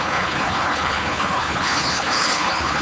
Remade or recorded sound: remade